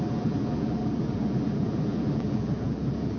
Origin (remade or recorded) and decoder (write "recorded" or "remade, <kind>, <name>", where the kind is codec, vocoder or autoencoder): remade, vocoder, BigVGAN v2